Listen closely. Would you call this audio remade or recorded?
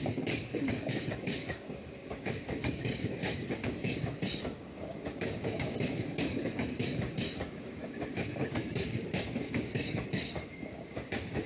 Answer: remade